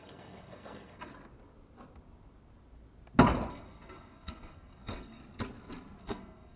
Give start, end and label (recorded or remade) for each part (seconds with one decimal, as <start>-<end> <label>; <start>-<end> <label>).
0.0-1.1 remade; 1.1-3.5 recorded; 3.5-5.2 remade; 5.2-6.0 recorded; 6.0-6.6 remade